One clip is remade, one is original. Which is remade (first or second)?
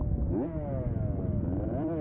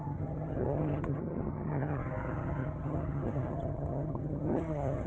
second